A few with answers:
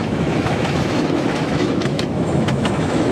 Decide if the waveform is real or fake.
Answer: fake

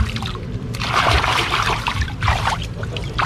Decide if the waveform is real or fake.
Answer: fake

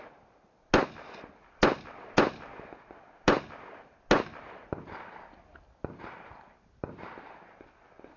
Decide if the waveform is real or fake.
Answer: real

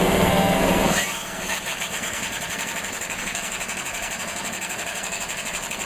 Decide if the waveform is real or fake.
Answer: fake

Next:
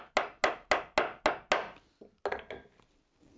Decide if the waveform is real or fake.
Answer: real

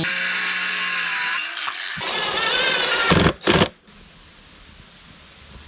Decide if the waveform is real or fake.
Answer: real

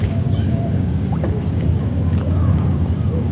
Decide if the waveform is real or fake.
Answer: fake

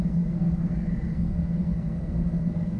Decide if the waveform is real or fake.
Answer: fake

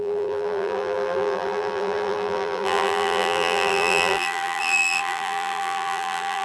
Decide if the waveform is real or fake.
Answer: fake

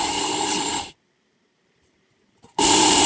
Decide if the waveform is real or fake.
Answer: fake